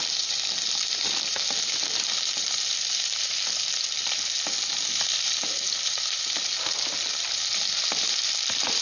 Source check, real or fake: real